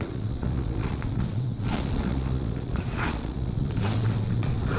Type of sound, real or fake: fake